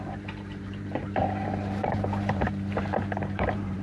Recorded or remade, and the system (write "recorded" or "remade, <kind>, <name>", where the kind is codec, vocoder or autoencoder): remade, vocoder, BigVGAN v2